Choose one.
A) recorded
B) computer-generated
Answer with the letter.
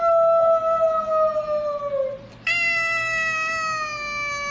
A